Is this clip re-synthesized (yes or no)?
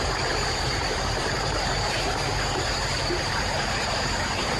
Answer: yes